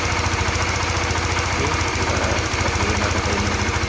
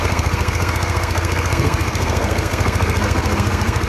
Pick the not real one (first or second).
second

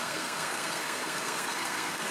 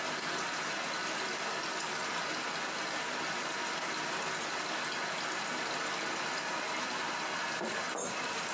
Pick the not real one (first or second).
first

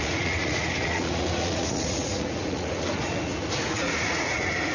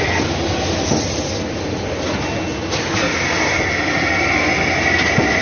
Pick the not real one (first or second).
first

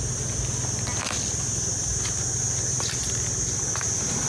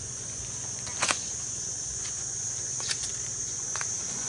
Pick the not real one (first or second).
second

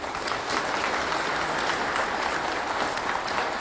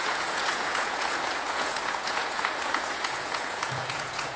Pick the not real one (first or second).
second